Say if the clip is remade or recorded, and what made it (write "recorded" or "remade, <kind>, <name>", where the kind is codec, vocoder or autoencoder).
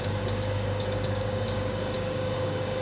remade, codec, DAC